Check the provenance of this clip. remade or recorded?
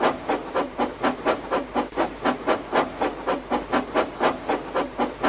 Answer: recorded